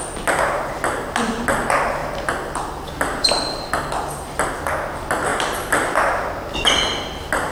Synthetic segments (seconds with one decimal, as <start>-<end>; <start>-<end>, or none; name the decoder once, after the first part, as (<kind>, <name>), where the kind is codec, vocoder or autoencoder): 2.0-4.5 (vocoder, BigVGAN v2)